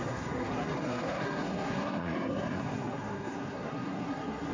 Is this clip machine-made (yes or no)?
yes